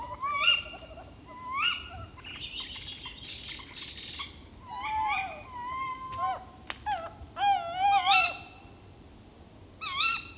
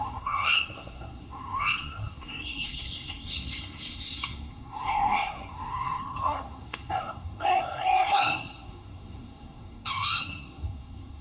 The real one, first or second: first